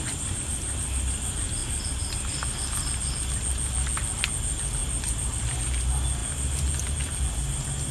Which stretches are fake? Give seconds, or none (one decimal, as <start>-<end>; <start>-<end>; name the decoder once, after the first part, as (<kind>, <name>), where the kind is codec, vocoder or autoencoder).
4.8-5.6 (vocoder, BigVGAN v2)